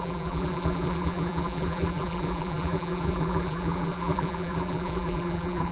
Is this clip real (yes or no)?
no